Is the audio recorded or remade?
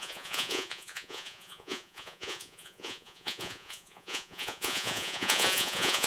remade